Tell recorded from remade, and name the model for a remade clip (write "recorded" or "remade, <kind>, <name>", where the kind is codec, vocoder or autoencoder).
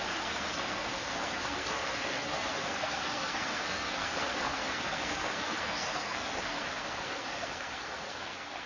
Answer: remade, codec, SNAC